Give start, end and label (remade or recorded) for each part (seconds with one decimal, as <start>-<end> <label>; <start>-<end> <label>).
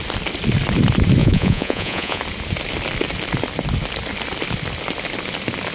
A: 0.0-1.2 recorded; 1.2-2.2 remade; 2.2-5.7 recorded